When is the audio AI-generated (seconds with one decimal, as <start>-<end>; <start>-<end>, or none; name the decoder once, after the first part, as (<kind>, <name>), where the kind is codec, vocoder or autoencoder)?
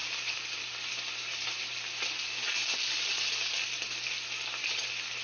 none